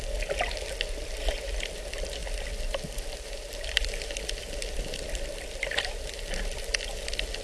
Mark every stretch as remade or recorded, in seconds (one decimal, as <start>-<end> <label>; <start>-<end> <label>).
0.0-7.4 recorded